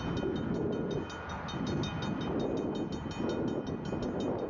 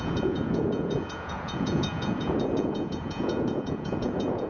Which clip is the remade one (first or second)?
second